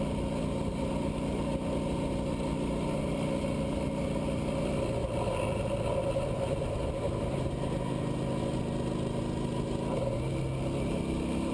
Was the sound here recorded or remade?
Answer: recorded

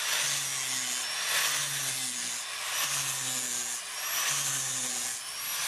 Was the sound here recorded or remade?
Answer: recorded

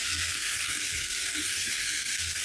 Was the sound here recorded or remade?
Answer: remade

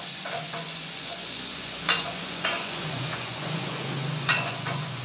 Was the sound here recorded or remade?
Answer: remade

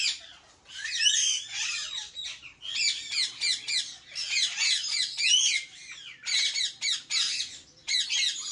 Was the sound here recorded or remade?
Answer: recorded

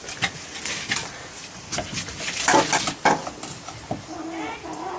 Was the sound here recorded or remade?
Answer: recorded